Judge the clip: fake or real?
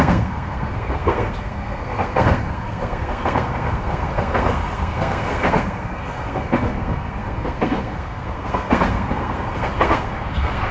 fake